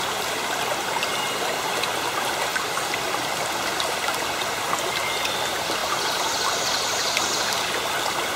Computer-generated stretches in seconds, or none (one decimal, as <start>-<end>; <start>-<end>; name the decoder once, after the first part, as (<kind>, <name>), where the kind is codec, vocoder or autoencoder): 5.8-8.0 (vocoder, BigVGAN v2)